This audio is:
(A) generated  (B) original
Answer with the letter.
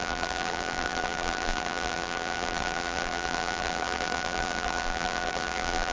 A